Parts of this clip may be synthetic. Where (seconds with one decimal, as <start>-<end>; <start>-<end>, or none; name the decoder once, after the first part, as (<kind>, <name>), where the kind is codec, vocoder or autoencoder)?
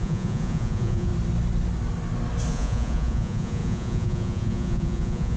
0.0-1.1 (vocoder, Vocos); 2.5-5.4